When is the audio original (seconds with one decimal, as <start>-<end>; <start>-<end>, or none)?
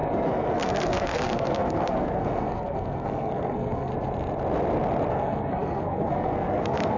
3.9-5.1